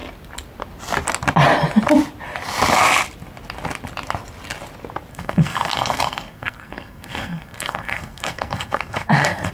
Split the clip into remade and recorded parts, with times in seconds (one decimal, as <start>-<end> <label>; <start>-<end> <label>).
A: 0.0-5.1 recorded; 5.1-9.5 remade